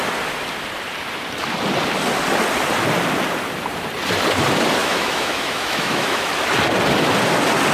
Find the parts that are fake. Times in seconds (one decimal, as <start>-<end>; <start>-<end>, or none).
4.8-6.3